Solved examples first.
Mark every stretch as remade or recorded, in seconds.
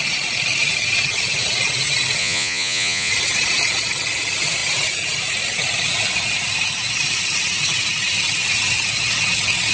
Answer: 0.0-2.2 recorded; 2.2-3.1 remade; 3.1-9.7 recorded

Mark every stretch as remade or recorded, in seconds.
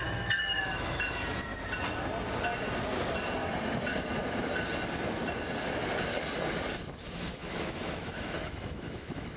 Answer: 0.0-1.1 remade; 1.1-7.4 recorded; 7.4-9.4 remade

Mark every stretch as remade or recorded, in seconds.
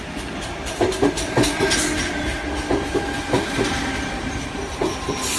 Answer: 0.0-5.4 recorded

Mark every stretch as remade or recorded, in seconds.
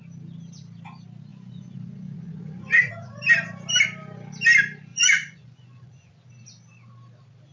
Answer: 0.0-1.3 recorded; 1.3-2.9 remade; 2.9-4.9 recorded; 4.9-6.1 remade; 6.1-7.5 recorded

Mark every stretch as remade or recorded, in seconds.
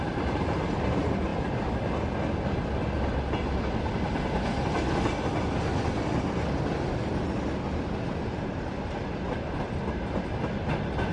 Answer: 0.0-11.1 recorded